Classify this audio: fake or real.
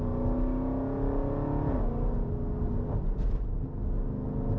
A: real